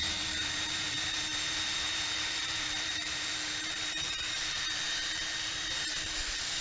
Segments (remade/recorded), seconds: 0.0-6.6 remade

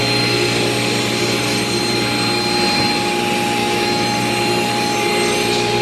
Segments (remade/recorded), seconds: 0.0-3.6 recorded; 3.6-4.2 remade; 4.2-5.8 recorded

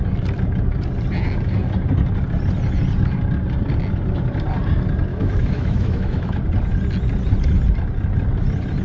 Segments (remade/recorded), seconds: 0.0-5.1 recorded; 5.1-6.4 remade; 6.4-8.8 recorded

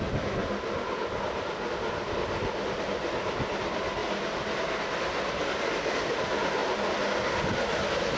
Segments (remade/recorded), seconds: 0.0-8.2 recorded

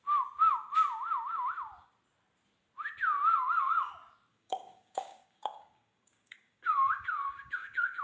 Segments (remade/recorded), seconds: 0.0-3.4 recorded; 3.4-3.9 remade; 3.9-4.3 recorded; 4.3-8.0 remade